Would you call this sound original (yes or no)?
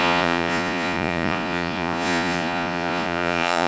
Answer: no